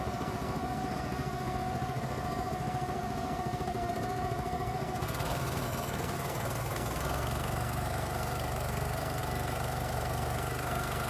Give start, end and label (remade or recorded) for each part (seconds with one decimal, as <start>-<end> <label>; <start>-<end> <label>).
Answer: 0.0-11.1 remade